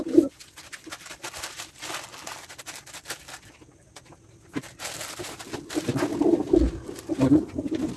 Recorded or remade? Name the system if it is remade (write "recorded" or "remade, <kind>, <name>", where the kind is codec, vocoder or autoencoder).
recorded